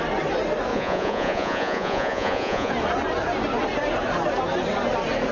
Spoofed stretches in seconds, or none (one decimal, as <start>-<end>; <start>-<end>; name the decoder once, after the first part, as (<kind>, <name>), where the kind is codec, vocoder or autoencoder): 0.7-2.7 (vocoder, Vocos)